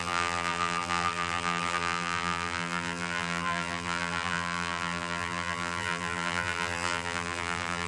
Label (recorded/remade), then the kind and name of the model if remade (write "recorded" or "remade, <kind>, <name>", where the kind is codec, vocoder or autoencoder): remade, vocoder, BigVGAN v2